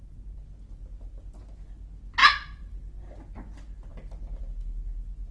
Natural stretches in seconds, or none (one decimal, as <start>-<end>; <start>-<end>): 0.0-2.2; 2.8-5.3